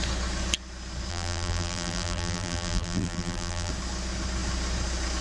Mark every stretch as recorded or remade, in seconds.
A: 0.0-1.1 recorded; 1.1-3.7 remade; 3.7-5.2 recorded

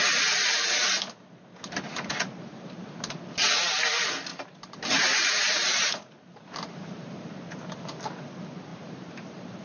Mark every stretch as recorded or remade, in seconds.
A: 0.0-4.3 recorded; 4.3-7.3 remade; 7.3-8.7 recorded; 8.7-9.6 remade